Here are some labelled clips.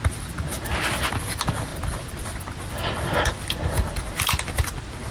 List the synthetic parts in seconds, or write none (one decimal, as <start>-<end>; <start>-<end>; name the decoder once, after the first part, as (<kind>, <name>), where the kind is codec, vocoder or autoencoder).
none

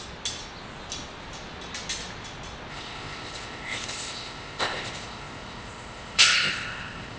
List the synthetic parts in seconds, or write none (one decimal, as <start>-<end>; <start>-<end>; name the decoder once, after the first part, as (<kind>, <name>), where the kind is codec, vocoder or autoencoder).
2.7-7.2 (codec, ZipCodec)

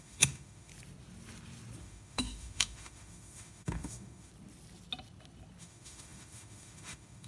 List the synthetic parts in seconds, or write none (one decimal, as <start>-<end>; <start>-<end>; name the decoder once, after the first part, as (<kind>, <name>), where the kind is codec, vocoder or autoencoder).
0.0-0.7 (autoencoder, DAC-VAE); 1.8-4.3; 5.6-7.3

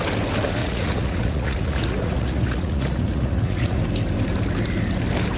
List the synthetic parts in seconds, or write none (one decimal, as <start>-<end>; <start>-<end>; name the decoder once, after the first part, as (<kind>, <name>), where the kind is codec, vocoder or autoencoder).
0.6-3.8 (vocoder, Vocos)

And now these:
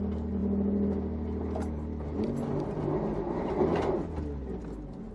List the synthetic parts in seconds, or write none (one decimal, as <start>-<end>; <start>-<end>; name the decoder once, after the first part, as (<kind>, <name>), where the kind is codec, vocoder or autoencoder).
none

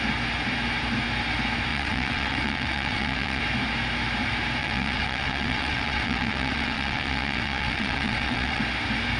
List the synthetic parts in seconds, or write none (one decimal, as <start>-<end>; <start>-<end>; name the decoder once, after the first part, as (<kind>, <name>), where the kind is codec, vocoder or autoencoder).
1.7-3.4 (vocoder, WaveNeXt); 4.6-8.6